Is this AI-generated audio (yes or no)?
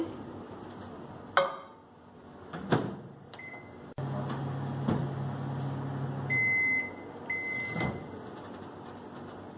no